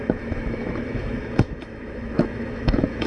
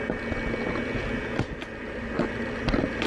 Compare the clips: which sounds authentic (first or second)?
second